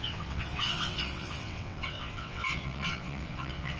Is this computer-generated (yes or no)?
yes